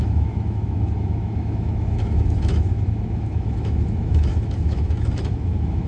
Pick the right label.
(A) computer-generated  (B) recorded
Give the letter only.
A